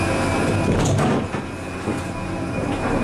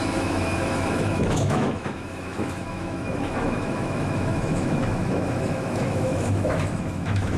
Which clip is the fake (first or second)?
second